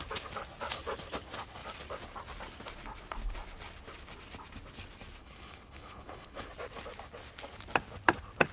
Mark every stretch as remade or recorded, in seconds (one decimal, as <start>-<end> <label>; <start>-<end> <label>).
0.0-5.2 recorded; 5.2-6.5 remade; 6.5-8.5 recorded